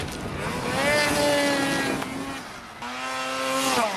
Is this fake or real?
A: real